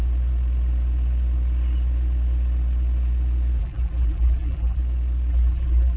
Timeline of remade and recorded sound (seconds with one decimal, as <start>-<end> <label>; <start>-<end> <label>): 0.0-3.6 recorded; 3.6-4.8 remade; 4.8-5.3 recorded; 5.3-6.0 remade